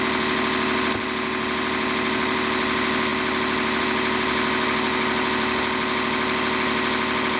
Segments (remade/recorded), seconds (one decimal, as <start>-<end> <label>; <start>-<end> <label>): 0.0-7.4 recorded